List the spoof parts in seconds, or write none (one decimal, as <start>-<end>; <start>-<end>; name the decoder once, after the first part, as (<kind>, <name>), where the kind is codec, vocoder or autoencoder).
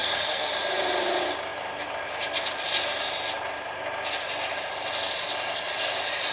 0.0-0.5 (codec, SNAC)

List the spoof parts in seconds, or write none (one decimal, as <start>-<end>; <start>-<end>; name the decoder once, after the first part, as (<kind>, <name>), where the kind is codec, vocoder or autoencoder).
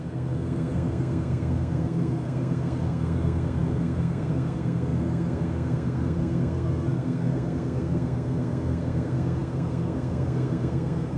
0.0-11.2 (codec, SNAC)